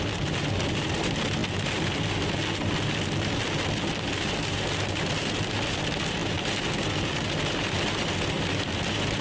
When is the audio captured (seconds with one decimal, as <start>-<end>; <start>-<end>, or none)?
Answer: 0.0-9.2